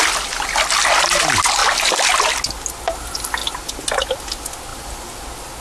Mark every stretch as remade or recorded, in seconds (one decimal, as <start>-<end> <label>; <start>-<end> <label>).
0.0-5.6 recorded